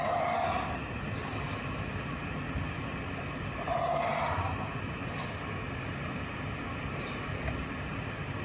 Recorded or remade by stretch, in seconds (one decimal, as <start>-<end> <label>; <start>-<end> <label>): 0.0-8.4 recorded